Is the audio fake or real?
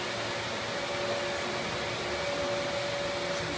real